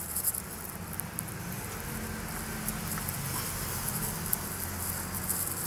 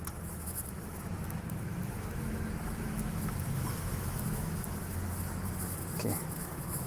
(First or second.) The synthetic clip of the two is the second